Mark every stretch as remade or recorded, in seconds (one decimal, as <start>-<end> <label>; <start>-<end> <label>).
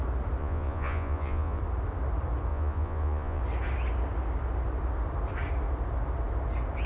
0.0-0.4 recorded; 0.4-1.6 remade; 1.6-2.5 recorded; 2.5-3.4 remade; 3.4-6.9 recorded